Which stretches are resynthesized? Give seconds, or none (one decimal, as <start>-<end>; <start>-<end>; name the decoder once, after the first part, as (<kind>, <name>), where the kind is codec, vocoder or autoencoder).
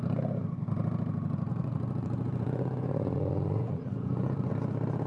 1.5-4.5 (vocoder, Vocos)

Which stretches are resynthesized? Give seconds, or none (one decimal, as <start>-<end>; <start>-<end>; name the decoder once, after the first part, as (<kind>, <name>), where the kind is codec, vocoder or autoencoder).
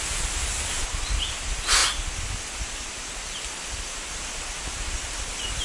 none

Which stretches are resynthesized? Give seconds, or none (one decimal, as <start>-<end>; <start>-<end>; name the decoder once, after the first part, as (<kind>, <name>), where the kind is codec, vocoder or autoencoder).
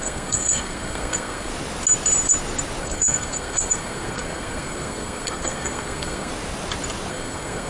0.0-1.5 (codec, SNAC); 2.8-6.3; 7.1-7.7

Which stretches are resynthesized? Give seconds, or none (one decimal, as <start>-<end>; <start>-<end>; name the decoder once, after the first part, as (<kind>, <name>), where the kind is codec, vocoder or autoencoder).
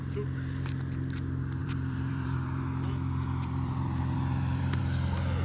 1.6-4.8 (vocoder, BigVGAN v2)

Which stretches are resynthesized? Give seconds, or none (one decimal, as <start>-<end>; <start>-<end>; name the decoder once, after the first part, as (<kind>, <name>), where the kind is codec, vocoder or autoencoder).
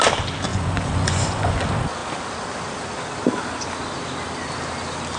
0.5-1.6 (vocoder, Vocos)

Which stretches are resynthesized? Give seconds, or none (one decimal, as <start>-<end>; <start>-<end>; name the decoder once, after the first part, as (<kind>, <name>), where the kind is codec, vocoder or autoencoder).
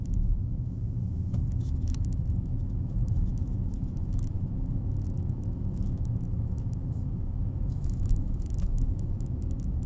0.0-9.9 (autoencoder, DAC-VAE)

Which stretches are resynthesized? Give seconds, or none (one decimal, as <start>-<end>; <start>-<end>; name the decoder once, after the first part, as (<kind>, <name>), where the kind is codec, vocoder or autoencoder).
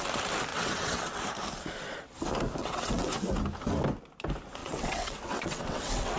0.5-1.2 (vocoder, WaveNeXt); 2.6-3.2; 4.6-6.2